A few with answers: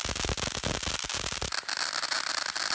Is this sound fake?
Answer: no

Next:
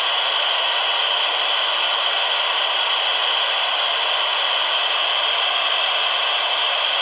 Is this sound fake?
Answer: no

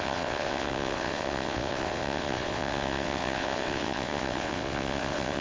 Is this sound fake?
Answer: yes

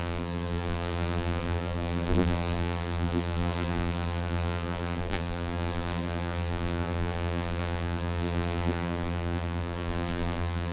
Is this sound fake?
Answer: yes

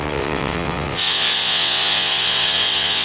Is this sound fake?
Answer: yes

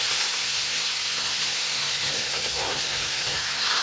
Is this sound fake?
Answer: yes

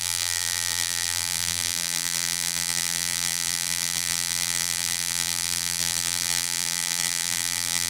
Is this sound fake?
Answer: yes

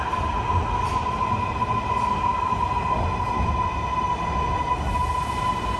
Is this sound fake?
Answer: no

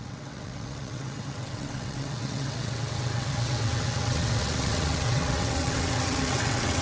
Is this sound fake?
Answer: yes